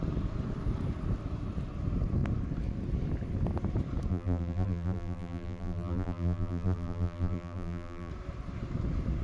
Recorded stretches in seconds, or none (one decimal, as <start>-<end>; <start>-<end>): 0.0-4.1; 8.1-9.2